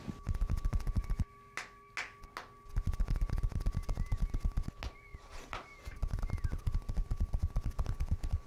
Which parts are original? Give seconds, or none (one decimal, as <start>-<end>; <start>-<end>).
0.0-5.1; 6.2-8.5